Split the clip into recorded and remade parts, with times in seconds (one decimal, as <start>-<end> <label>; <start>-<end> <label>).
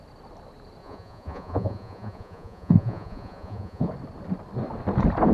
0.0-0.8 recorded; 0.8-3.9 remade; 3.9-5.3 recorded